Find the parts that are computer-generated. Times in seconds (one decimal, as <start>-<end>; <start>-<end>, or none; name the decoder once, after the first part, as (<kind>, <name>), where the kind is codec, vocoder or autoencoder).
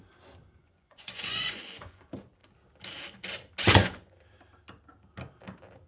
0.6-2.0 (vocoder, Vocos); 3.7-4.2